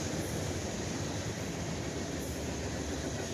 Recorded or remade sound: recorded